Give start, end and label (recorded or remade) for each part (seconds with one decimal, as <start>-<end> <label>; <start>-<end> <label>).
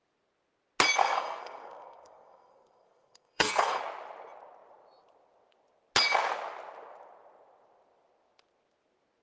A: 0.0-1.0 recorded; 1.0-3.8 remade; 3.8-9.2 recorded